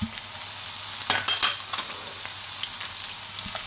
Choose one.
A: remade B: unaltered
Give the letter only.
B